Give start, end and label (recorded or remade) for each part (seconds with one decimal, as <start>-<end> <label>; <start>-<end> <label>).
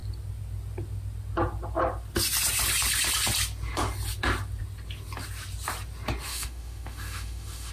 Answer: 0.0-6.3 recorded; 6.3-7.7 remade